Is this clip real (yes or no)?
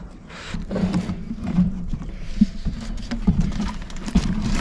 no